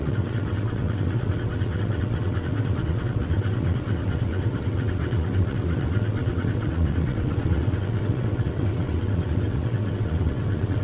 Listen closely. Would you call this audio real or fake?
fake